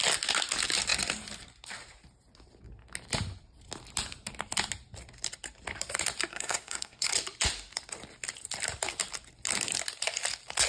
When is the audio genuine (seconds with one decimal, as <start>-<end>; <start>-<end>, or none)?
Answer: 0.0-6.3; 7.1-10.7

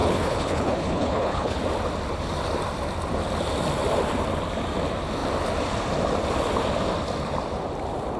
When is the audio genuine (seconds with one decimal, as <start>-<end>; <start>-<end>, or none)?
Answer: 1.6-8.2

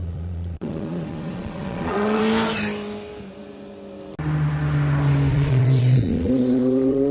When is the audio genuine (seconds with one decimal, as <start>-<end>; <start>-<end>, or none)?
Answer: 2.2-5.3

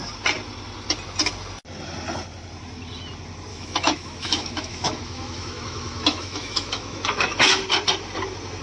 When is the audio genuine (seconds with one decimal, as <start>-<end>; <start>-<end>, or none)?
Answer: 0.0-3.5; 7.6-8.6

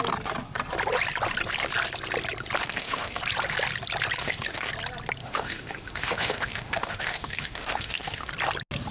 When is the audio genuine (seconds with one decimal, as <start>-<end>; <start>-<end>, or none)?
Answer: 0.0-2.6; 3.2-4.2; 4.7-5.2; 8.3-8.9